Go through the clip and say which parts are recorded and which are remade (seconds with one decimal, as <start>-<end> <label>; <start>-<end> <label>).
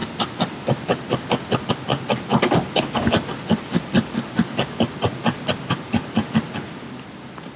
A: 0.0-7.6 recorded